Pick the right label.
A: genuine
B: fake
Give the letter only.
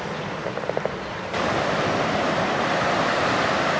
A